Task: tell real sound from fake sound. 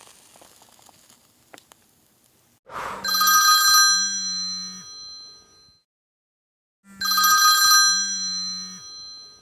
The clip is real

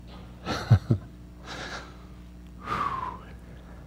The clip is real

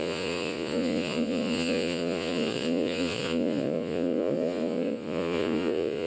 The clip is fake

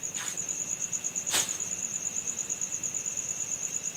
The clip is real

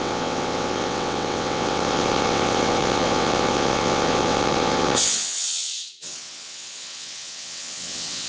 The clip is fake